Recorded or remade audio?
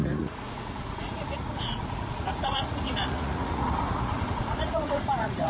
remade